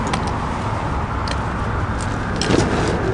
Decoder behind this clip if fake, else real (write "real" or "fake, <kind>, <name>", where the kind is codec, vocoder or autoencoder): real